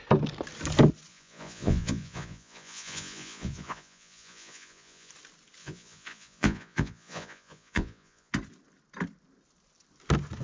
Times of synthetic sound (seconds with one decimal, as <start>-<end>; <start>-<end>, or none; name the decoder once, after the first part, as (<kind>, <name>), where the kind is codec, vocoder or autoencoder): 1.1-5.1 (vocoder, Vocos); 5.6-8.3